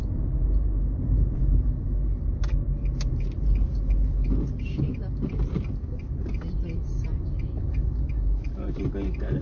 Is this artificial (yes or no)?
no